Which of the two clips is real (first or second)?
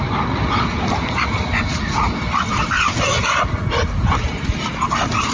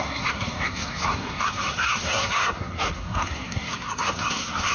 first